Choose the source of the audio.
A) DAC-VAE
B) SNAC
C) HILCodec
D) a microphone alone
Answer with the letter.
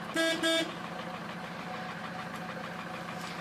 D